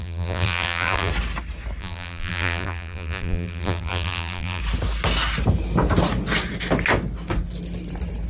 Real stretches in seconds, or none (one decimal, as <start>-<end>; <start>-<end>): 1.1-1.8; 4.6-8.3

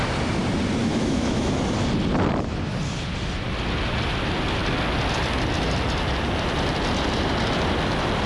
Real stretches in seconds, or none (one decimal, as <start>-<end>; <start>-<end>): 0.0-0.8; 1.5-8.3

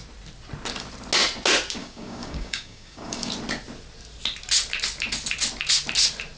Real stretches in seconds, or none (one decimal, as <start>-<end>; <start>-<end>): 0.0-1.8; 3.3-6.4

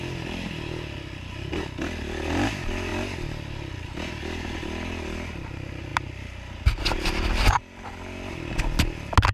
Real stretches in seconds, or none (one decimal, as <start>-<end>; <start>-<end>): 0.0-9.3

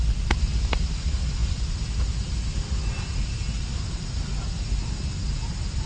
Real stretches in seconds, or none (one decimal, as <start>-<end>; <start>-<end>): 0.0-5.9